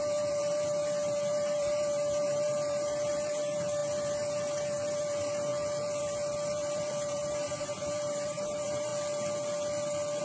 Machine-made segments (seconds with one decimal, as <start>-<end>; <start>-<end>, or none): 0.0-5.5; 6.0-8.9